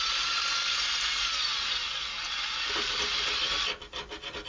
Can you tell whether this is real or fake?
real